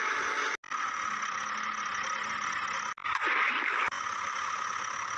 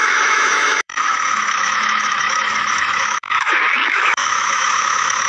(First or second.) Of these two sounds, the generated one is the second